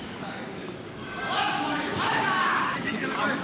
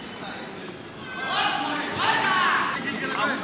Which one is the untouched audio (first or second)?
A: second